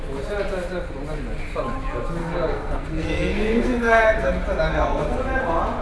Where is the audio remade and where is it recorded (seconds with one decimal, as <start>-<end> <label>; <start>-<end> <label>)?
0.0-2.2 recorded; 2.2-4.3 remade; 4.3-4.7 recorded; 4.7-5.2 remade; 5.2-5.8 recorded